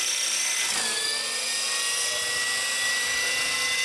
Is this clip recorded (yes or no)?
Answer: yes